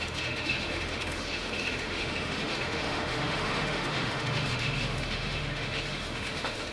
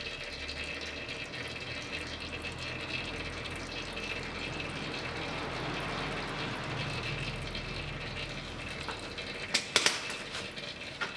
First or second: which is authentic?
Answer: second